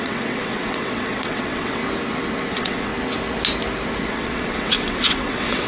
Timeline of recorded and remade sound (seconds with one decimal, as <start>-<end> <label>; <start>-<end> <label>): 0.0-1.8 remade; 1.8-2.5 recorded; 2.5-2.9 remade; 2.9-4.1 recorded; 4.1-5.7 remade